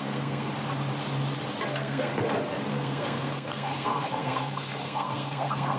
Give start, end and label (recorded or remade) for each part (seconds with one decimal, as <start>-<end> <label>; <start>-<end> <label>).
0.0-0.5 remade; 0.5-1.7 recorded; 1.7-2.1 remade; 2.1-2.7 recorded; 2.7-5.8 remade